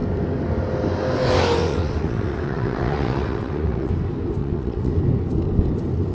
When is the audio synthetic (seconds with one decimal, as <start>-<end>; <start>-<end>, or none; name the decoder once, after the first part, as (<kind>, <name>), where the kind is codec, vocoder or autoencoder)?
1.6-3.9 (vocoder, WaveNeXt); 4.4-4.9